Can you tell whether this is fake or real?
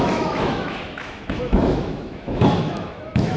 fake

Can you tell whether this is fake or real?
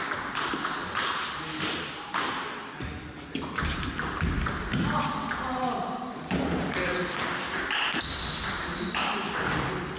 real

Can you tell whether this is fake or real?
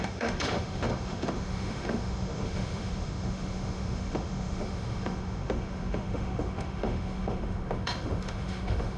fake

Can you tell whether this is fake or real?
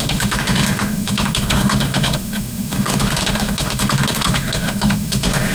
fake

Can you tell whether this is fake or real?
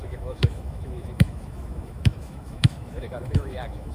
fake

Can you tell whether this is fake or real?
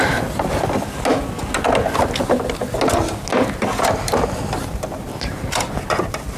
real